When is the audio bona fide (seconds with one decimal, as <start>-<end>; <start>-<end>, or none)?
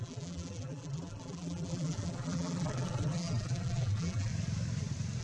4.3-5.2